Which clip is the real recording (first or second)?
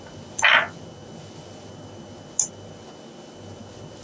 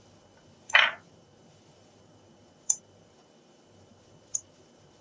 first